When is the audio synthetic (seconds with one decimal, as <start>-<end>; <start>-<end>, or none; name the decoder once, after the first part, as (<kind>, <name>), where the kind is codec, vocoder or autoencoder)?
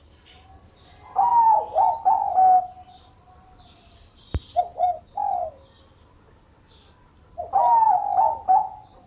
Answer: none